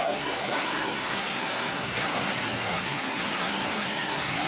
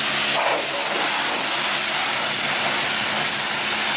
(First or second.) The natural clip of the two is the second